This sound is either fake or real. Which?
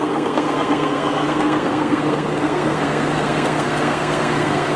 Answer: fake